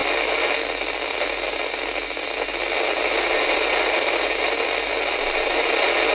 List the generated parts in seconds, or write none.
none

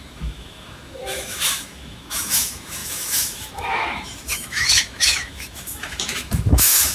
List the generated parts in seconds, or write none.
0.0-6.9 (autoencoder, DAC-VAE)

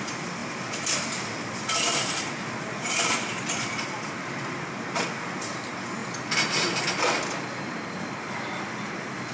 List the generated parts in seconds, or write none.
0.4-4.7 (vocoder, BigVGAN v2)

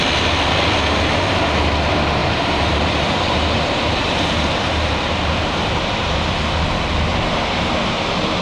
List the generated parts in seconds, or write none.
2.2-6.3 (vocoder, BigVGAN v2); 7.1-8.4

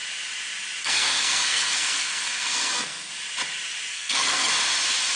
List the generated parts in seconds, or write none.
0.8-3.1 (codec, SNAC); 3.9-4.5

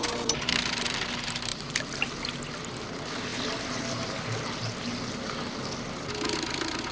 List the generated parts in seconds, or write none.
none